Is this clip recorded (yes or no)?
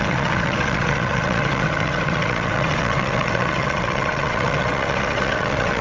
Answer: no